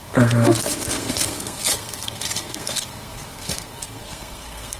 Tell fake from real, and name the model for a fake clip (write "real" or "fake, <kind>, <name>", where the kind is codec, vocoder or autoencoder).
fake, codec, SNAC